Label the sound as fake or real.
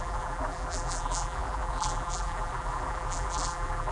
fake